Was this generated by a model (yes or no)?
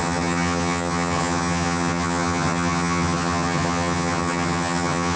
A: yes